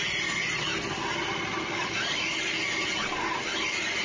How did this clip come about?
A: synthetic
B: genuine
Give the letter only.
B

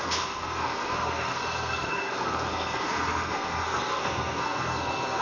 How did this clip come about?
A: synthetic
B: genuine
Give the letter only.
A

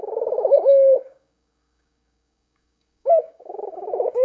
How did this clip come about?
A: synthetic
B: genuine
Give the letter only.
A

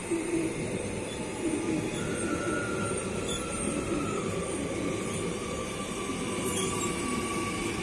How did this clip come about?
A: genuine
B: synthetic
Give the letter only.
A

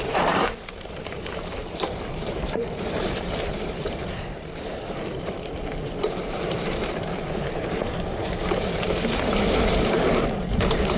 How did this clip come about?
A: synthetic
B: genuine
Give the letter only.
A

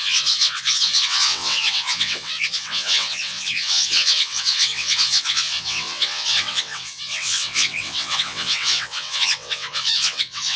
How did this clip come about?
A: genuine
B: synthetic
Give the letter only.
B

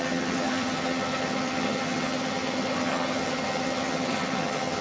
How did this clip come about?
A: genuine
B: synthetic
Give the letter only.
B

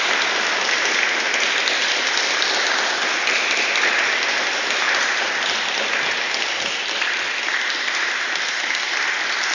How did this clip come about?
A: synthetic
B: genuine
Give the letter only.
B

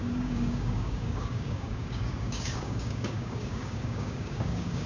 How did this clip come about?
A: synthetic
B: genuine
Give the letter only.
A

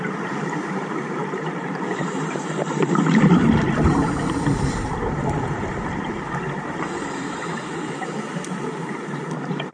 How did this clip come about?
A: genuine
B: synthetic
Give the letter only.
B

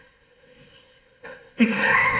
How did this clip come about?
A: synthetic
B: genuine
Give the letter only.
A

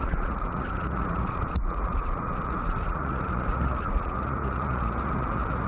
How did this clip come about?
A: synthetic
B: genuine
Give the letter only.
A